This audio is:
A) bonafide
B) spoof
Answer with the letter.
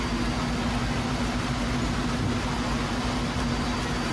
A